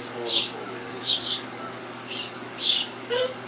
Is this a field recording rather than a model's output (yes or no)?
no